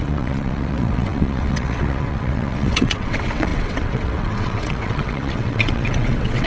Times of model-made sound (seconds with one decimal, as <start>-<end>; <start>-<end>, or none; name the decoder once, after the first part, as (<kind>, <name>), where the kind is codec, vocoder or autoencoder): 0.0-6.5 (vocoder, WaveNeXt)